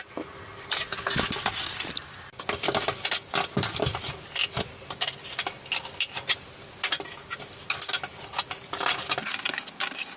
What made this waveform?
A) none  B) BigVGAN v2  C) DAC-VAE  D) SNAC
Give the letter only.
A